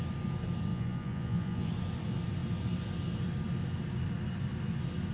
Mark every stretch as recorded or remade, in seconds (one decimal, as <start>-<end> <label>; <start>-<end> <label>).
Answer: 0.0-0.7 recorded; 0.7-1.7 remade; 1.7-5.1 recorded